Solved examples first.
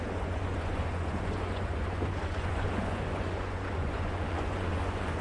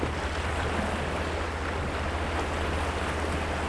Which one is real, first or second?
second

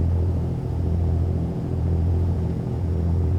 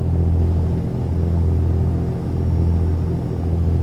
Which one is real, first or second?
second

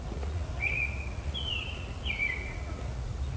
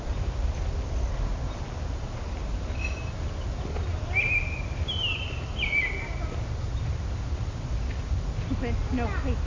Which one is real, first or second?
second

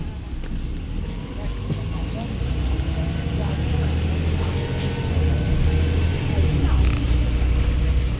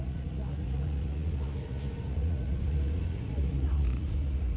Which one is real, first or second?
first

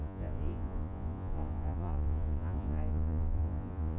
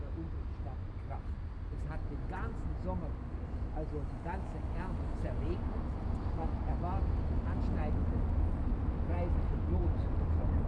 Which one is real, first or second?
second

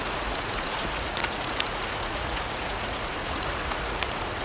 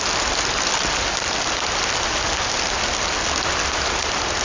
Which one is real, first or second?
second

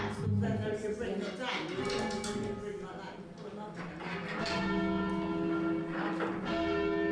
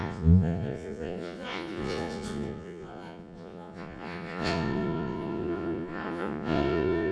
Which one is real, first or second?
first